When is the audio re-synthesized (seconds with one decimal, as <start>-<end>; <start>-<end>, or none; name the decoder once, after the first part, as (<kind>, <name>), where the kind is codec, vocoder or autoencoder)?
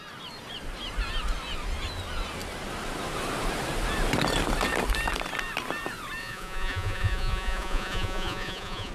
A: 6.2-8.9 (vocoder, Vocos)